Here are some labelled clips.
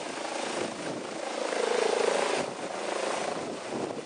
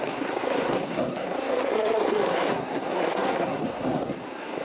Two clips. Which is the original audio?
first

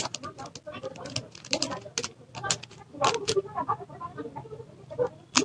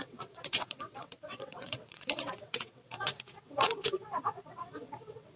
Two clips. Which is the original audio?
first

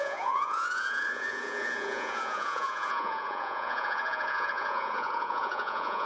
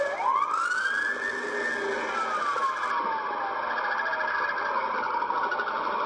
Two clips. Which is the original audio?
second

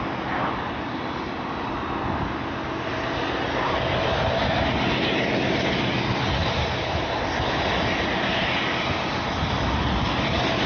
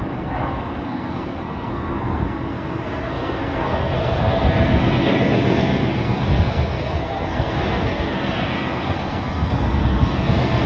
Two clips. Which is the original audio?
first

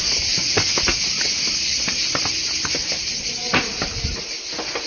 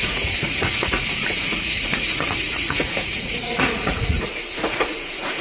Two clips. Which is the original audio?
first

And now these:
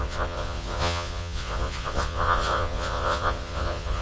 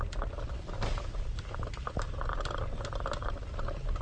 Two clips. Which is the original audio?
second